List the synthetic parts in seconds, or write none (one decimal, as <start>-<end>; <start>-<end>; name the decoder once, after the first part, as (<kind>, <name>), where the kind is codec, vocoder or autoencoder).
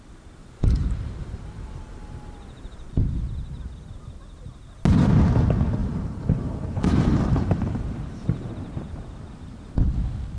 0.4-3.0 (vocoder, BigVGAN v2); 5.8-8.5